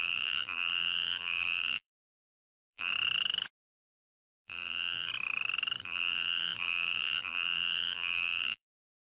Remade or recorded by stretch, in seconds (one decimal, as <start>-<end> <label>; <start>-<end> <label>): 0.0-2.9 remade; 2.9-4.3 recorded; 4.3-5.1 remade; 5.1-5.8 recorded; 5.8-9.2 remade